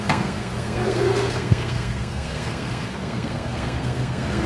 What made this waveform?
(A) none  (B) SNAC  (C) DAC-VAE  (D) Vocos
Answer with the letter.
B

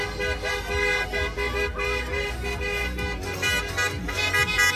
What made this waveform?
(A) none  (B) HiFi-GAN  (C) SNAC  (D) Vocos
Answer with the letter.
A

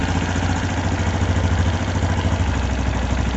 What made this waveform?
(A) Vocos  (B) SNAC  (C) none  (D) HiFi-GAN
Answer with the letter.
C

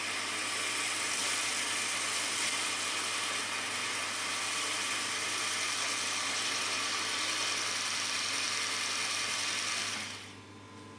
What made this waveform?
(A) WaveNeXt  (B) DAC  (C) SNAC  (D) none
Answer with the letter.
D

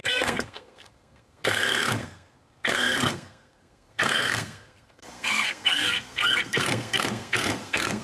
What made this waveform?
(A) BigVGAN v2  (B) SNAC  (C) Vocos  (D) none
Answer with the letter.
B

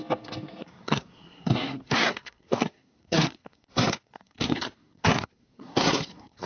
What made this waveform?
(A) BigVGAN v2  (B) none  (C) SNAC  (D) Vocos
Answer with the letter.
C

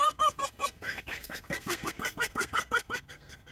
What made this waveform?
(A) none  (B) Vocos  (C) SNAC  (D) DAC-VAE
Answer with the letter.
C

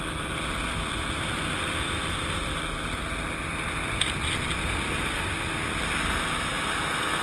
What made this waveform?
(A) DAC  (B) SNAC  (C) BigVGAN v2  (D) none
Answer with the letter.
D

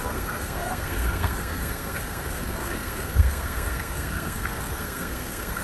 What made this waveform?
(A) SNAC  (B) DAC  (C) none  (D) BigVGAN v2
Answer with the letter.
A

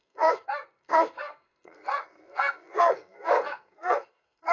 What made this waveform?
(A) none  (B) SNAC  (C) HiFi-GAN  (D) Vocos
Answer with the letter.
B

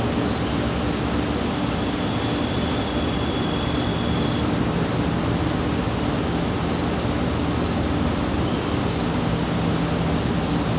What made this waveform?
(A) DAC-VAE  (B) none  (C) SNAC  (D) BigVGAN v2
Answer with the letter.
B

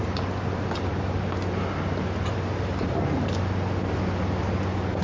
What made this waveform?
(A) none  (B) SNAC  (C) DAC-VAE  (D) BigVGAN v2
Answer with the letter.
A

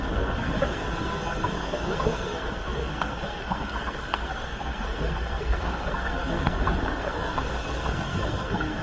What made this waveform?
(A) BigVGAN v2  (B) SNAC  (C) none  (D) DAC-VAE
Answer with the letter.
B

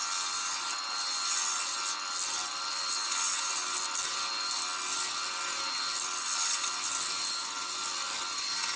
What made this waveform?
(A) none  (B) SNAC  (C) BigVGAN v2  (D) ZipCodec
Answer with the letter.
A